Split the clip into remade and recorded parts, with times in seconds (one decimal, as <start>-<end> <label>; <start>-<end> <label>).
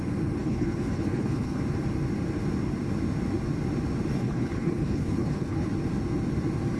0.0-0.4 recorded; 0.4-1.6 remade; 1.6-4.1 recorded; 4.1-5.7 remade; 5.7-6.8 recorded